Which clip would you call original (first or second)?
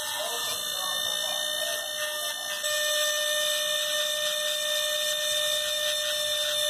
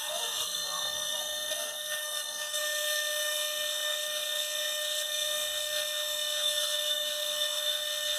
first